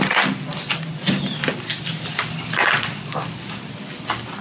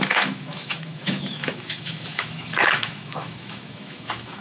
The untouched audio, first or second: first